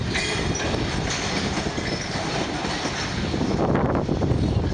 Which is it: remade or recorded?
recorded